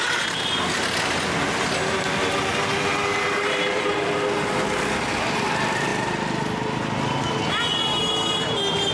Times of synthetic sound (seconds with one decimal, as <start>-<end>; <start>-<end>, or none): none